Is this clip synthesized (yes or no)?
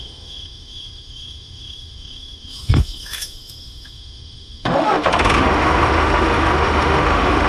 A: yes